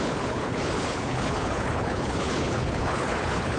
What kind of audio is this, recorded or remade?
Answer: remade